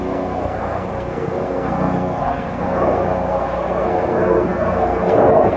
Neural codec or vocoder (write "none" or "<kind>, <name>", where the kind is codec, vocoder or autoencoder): codec, SNAC